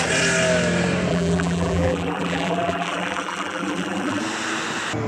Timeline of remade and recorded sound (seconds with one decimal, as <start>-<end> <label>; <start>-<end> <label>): 0.0-1.1 recorded; 1.1-4.2 remade; 4.2-5.1 recorded